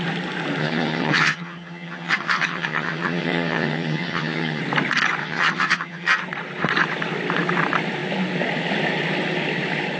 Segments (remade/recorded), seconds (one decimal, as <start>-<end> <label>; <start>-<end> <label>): 0.0-0.6 recorded; 0.6-4.6 remade; 4.6-5.2 recorded; 5.2-6.2 remade; 6.2-10.0 recorded